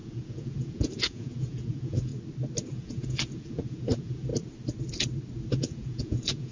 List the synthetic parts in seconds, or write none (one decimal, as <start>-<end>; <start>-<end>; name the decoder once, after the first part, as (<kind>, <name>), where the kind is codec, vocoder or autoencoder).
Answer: 0.0-2.1 (vocoder, Vocos); 2.7-4.3; 5.5-6.5